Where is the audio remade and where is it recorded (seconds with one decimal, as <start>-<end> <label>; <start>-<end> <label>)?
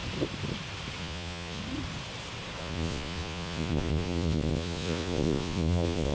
0.0-1.0 recorded; 1.0-1.6 remade; 1.6-2.6 recorded; 2.6-6.1 remade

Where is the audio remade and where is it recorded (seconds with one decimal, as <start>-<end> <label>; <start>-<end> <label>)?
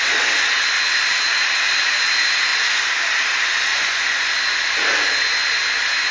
0.0-3.7 recorded; 3.7-4.3 remade; 4.3-6.1 recorded